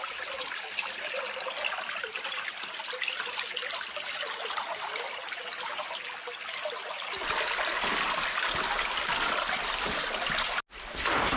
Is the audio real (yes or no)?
yes